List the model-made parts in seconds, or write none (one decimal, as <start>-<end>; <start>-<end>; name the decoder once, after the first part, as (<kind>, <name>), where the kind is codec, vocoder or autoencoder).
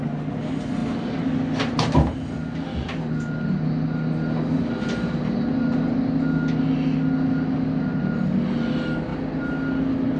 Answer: 7.9-8.4 (vocoder, BigVGAN v2)